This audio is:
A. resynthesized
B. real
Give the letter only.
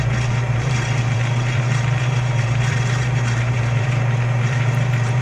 A